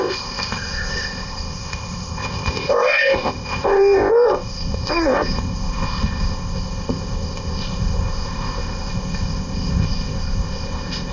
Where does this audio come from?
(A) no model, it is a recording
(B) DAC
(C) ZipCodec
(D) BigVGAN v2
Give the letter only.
C